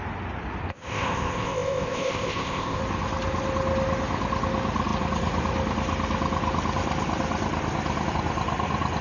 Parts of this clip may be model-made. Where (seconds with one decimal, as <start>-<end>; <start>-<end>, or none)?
0.7-2.8